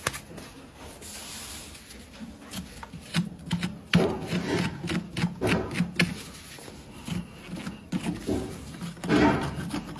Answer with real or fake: real